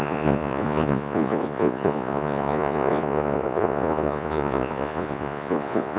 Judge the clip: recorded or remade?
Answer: remade